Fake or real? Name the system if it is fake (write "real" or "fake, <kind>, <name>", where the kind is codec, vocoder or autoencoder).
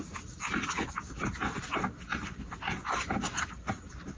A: real